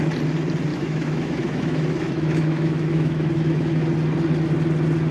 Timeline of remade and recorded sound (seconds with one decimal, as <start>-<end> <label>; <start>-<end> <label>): 0.0-0.7 recorded; 0.7-3.8 remade; 3.8-5.1 recorded